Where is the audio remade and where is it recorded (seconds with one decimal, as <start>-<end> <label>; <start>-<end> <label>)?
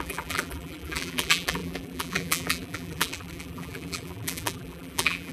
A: 0.0-5.3 remade